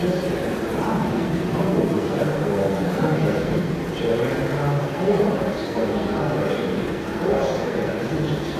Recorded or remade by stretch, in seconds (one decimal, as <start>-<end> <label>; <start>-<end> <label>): 0.0-1.1 recorded; 1.1-3.8 remade; 3.8-4.8 recorded; 4.8-8.6 remade